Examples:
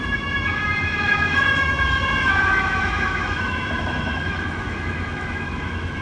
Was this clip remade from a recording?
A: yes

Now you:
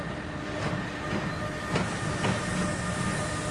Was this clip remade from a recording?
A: no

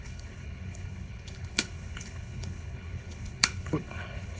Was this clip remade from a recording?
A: yes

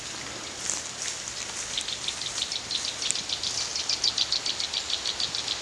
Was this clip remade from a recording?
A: no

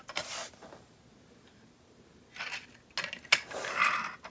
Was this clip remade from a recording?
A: no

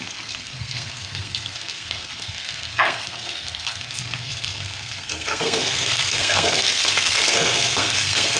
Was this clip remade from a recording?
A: yes